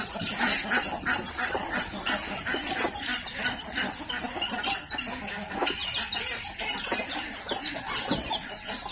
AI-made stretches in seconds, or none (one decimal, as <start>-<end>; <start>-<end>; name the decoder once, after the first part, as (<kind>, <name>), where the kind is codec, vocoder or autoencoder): 3.1-4.6 (vocoder, BigVGAN v2)